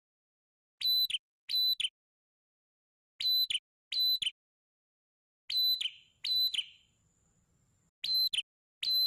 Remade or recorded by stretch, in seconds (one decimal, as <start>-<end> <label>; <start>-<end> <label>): 0.0-9.1 recorded